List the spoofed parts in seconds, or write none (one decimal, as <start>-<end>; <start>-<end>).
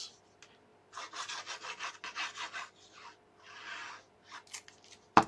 none